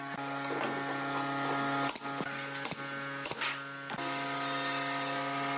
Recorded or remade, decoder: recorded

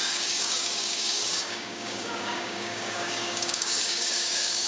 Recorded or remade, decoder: remade, codec, DAC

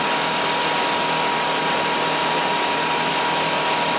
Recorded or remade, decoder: recorded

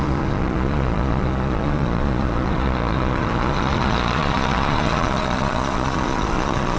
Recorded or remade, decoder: remade, vocoder, Vocos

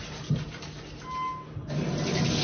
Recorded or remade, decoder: recorded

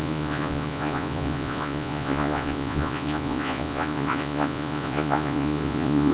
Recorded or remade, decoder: remade, vocoder, Vocos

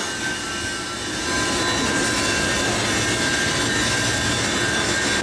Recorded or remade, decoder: recorded